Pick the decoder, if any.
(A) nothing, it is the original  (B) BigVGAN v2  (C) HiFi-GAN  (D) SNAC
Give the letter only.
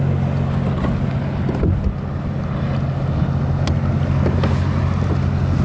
A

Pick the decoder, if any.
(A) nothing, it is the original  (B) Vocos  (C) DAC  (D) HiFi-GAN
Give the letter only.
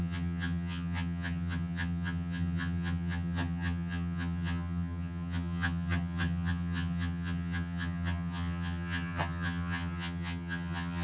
D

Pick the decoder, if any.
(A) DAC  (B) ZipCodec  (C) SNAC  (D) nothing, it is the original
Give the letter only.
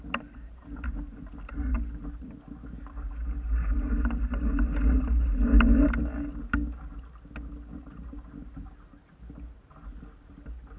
D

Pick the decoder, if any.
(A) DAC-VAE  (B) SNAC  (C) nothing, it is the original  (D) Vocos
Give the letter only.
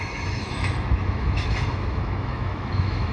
A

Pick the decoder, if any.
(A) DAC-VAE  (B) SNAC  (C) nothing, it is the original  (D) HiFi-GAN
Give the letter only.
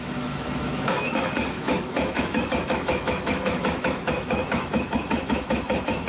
A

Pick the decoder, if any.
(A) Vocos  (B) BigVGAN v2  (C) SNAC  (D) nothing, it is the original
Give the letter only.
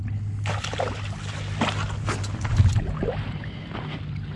D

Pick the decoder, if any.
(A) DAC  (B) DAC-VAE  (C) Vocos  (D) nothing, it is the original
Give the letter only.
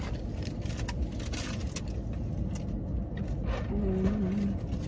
D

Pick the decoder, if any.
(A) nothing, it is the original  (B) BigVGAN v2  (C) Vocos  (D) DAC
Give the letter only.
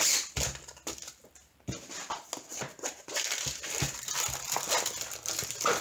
A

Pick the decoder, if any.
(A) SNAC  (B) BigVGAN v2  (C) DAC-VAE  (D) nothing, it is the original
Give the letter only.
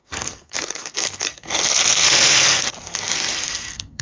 A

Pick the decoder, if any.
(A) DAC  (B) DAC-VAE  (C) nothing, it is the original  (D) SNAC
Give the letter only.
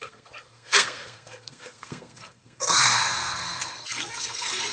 D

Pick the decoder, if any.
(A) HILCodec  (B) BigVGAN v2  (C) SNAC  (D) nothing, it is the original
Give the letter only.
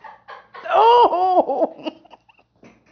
D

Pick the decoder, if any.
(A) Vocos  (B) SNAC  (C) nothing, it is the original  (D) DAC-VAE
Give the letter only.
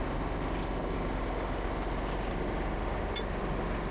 C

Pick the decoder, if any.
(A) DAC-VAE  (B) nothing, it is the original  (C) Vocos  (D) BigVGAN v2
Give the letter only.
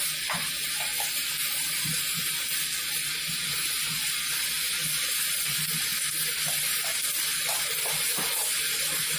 B